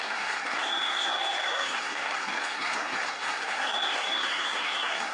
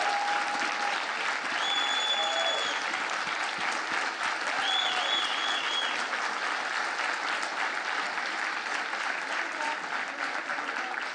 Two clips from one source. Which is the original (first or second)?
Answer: second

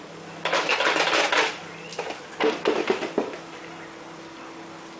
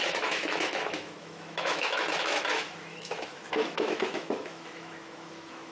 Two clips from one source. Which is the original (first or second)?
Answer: first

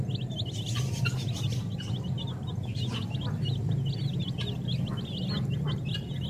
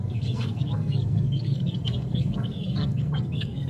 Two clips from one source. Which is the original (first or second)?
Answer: first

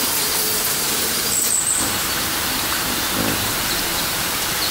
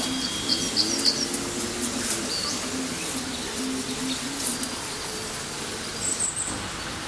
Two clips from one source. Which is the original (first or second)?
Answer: second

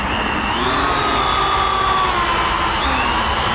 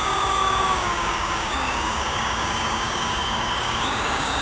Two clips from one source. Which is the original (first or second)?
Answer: first